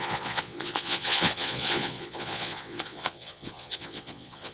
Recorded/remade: remade